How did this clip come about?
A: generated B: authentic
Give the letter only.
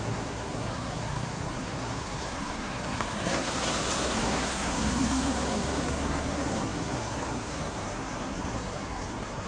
A